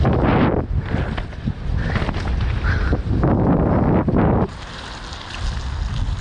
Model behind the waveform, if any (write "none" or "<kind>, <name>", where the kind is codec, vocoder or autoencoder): none